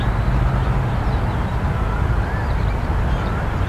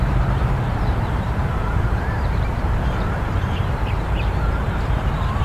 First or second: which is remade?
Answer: second